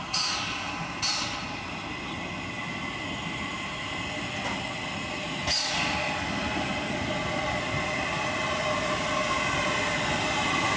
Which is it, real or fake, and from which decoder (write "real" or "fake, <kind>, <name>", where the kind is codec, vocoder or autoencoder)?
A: real